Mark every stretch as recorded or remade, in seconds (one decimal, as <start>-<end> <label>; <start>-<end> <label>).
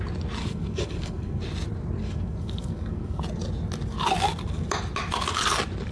0.0-0.4 recorded; 0.4-1.4 remade; 1.4-2.0 recorded; 2.0-3.2 remade; 3.2-5.9 recorded